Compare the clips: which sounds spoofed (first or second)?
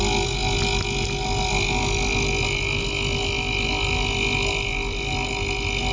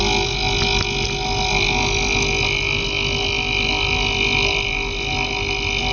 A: first